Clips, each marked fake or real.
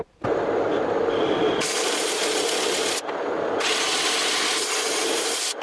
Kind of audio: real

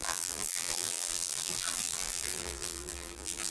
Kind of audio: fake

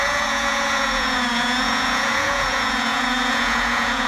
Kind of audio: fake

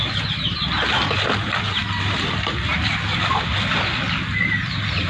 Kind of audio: real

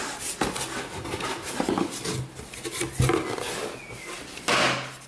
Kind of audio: real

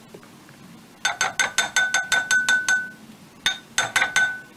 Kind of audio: real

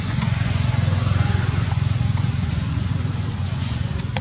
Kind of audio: fake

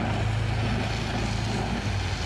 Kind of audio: real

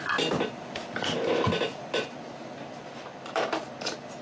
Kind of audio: real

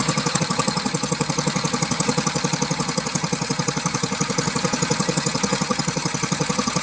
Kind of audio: fake